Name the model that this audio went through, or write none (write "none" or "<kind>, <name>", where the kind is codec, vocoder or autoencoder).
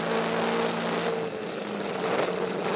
none